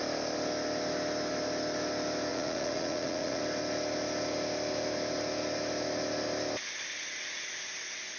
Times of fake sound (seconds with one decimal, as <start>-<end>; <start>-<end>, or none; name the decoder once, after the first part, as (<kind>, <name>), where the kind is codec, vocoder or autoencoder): 2.3-3.4 (vocoder, Vocos)